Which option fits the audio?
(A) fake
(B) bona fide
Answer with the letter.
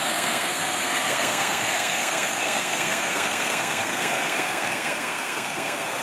A